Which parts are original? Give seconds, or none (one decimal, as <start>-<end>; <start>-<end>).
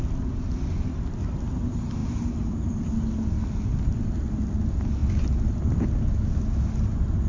0.0-2.0; 2.9-7.3